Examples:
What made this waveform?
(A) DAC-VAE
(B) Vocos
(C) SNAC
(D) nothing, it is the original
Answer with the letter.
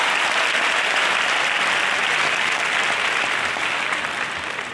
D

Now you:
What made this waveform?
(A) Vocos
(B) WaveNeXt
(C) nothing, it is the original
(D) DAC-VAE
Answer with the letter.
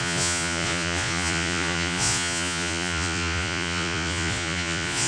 A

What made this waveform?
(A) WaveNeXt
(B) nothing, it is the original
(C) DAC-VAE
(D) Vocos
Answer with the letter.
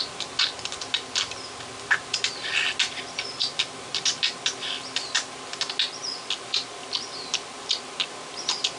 B